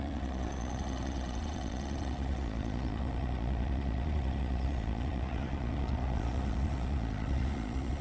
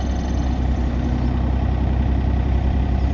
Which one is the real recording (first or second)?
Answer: second